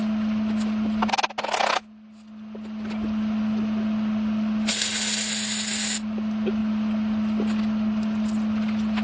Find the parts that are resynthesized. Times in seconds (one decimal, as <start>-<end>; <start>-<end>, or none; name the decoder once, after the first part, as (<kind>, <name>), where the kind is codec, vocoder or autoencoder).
none